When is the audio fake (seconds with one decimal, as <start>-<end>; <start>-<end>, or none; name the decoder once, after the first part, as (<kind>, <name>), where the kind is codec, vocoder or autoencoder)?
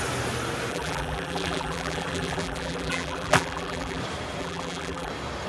0.7-4.0 (vocoder, BigVGAN v2); 4.4-5.1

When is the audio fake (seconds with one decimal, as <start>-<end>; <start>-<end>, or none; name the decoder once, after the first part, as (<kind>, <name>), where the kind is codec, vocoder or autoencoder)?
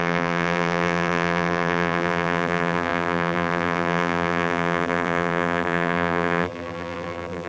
0.0-7.5 (vocoder, BigVGAN v2)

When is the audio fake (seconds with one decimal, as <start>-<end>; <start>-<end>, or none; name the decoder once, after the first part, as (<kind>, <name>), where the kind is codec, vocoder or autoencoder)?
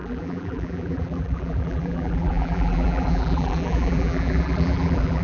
0.0-5.2 (vocoder, BigVGAN v2)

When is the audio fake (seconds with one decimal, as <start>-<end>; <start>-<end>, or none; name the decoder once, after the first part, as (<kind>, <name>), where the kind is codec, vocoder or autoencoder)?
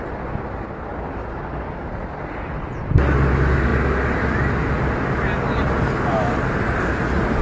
none